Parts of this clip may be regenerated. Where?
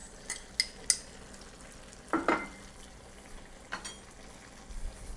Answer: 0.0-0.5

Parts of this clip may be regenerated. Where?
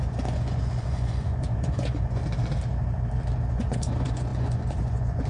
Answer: 0.0-2.2; 3.5-5.3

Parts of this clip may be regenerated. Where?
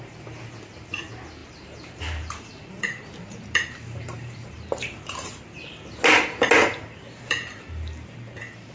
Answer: 1.4-5.4; 6.6-8.7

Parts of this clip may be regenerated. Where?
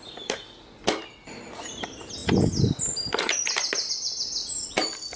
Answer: none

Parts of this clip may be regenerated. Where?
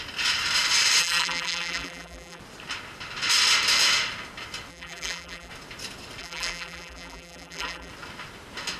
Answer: 1.0-2.4; 4.7-5.5; 6.2-7.9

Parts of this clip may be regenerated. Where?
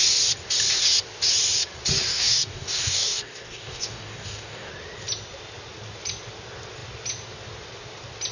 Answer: 2.1-4.7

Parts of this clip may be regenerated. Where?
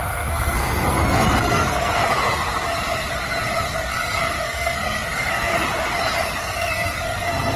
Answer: 0.0-2.0; 3.9-5.5; 6.4-7.6